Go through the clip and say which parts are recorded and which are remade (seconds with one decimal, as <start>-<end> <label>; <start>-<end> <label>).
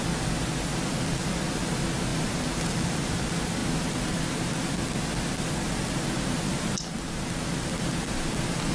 0.0-2.1 recorded; 2.1-3.2 remade; 3.2-8.7 recorded